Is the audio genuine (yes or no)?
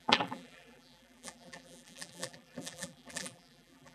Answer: no